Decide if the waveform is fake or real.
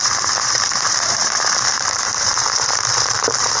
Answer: fake